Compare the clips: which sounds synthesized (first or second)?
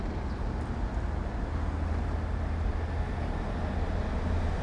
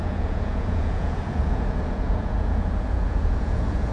second